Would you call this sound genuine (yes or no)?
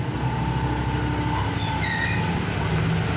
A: yes